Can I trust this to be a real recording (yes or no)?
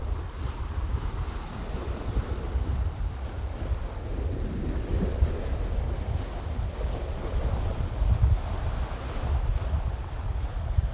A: yes